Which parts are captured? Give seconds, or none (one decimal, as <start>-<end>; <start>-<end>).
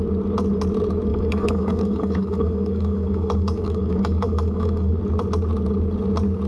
0.0-1.1; 5.0-6.5